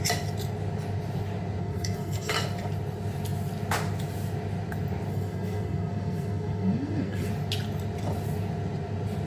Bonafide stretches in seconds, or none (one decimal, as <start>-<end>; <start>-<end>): 0.0-1.6; 2.3-5.1; 7.3-9.3